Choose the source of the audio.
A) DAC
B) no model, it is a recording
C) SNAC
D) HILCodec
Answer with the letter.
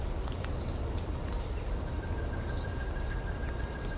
B